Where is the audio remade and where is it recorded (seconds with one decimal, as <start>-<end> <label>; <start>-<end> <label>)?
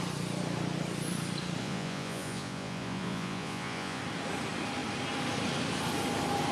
0.0-1.6 recorded; 1.6-4.0 remade; 4.0-6.5 recorded